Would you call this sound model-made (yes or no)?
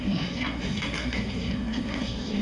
yes